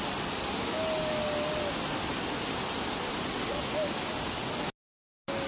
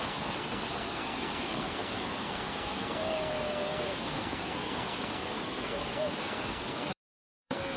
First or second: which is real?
first